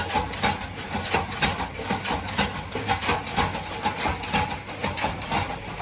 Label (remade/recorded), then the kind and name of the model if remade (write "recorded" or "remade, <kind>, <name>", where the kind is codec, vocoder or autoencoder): recorded